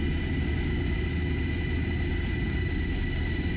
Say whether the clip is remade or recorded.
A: recorded